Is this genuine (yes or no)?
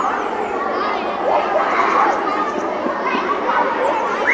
yes